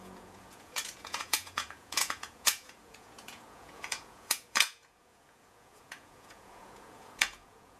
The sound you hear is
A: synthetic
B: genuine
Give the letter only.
A